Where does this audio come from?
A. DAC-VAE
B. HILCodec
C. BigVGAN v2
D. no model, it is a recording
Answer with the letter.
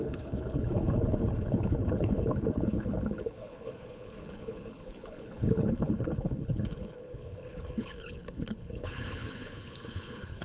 B